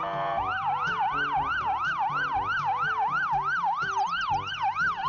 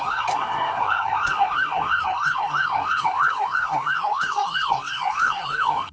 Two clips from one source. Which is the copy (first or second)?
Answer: second